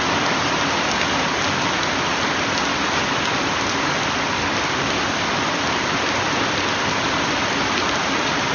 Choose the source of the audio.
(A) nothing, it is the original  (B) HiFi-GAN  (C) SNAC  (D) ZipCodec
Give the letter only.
A